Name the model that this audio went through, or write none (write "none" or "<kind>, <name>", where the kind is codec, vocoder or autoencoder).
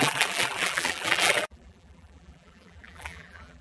vocoder, BigVGAN v2